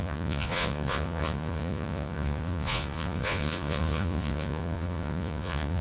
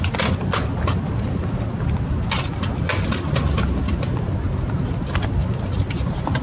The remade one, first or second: first